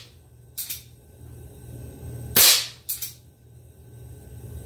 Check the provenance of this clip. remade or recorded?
recorded